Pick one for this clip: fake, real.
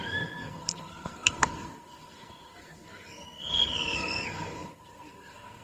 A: fake